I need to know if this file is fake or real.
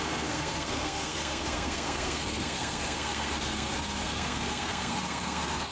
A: fake